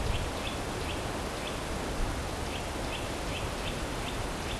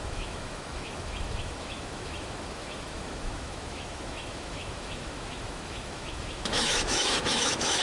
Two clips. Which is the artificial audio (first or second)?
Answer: second